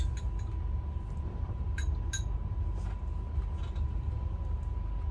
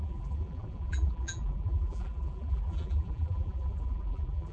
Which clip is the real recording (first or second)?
first